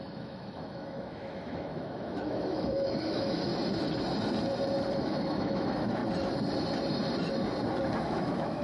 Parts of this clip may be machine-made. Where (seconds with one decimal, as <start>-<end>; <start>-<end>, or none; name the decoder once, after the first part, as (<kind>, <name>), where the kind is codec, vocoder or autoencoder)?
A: 0.0-3.5 (autoencoder, DAC-VAE); 5.0-6.0; 8.0-8.6